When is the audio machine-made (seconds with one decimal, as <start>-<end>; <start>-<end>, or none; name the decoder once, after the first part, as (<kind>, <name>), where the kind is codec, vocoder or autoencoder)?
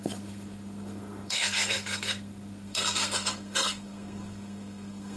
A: 0.0-5.2 (codec, SNAC)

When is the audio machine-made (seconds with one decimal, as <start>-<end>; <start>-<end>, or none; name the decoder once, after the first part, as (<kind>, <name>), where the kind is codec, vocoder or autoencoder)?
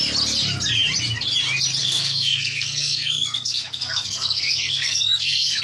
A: 1.8-5.6 (codec, SNAC)